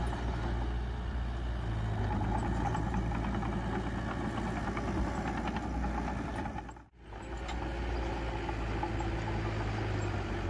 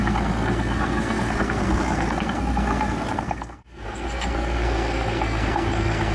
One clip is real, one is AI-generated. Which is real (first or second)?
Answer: first